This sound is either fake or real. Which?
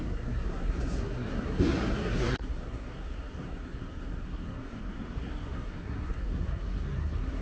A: fake